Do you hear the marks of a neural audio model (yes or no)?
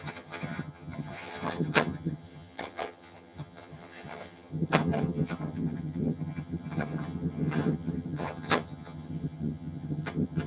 yes